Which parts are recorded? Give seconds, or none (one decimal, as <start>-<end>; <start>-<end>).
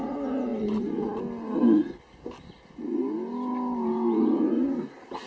0.0-5.3